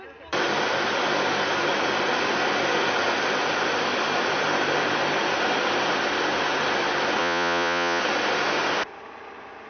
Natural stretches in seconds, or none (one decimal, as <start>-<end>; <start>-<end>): 0.0-7.2; 8.0-9.7